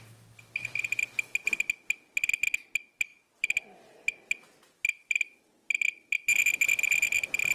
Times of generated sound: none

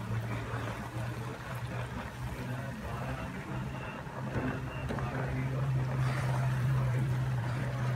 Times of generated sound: 4.8-7.6 (vocoder, BigVGAN v2)

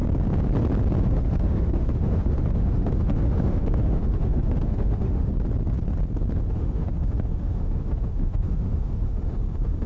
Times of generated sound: 1.0-5.3 (autoencoder, DAC-VAE); 6.5-9.9

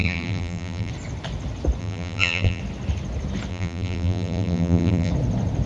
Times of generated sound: 0.0-0.9 (vocoder, BigVGAN v2); 1.8-2.6; 3.5-5.1

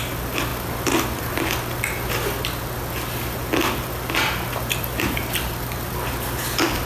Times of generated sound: none

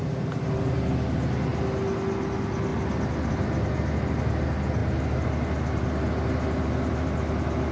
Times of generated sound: none

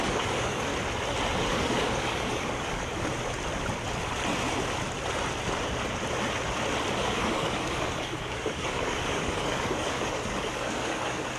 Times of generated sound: 0.0-0.7 (codec, DAC); 1.5-3.1; 7.0-11.4

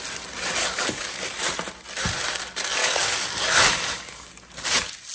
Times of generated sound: 0.6-1.3 (codec, DAC); 2.8-4.3